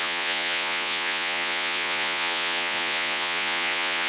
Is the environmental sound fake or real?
fake